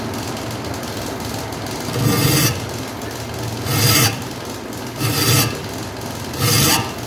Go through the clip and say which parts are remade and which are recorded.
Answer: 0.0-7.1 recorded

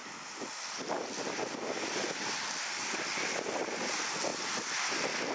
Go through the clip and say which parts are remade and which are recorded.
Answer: 0.0-5.3 recorded

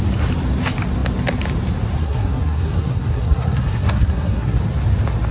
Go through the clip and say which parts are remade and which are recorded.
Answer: 0.0-2.0 recorded; 2.0-4.6 remade; 4.6-5.3 recorded

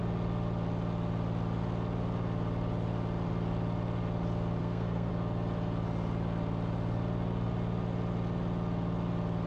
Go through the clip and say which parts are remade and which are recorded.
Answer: 0.0-4.6 recorded; 4.6-5.1 remade; 5.1-9.5 recorded

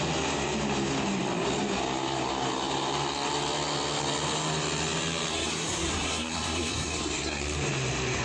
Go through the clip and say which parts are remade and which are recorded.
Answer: 0.0-5.3 recorded; 5.3-7.4 remade; 7.4-8.2 recorded

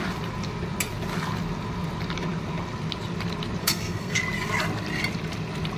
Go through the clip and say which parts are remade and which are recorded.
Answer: 0.0-3.6 recorded; 3.6-4.2 remade; 4.2-5.8 recorded

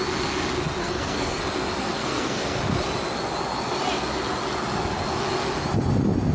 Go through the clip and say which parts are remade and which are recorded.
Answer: 0.0-0.8 recorded; 0.8-1.4 remade; 1.4-1.8 recorded; 1.8-2.6 remade; 2.6-6.3 recorded